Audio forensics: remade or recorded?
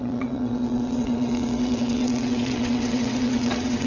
remade